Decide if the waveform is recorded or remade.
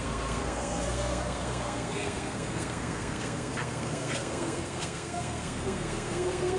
remade